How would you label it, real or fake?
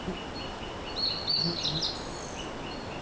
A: real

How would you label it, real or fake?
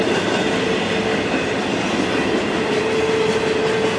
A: real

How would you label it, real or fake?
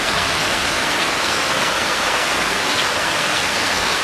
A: fake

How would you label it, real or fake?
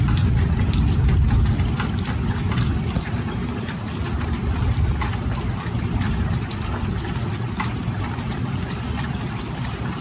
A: real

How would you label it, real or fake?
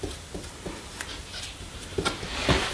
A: real